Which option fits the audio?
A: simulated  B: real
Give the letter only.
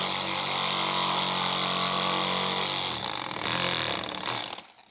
B